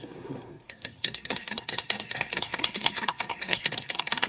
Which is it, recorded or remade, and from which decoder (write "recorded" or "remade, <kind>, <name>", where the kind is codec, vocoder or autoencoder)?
remade, codec, SNAC